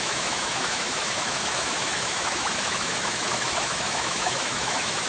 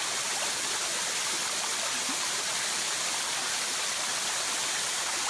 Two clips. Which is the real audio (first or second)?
second